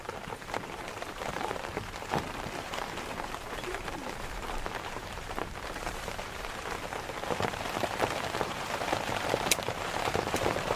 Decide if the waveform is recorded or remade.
remade